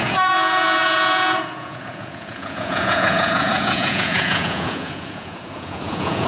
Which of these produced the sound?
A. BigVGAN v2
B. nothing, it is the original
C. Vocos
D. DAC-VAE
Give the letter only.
C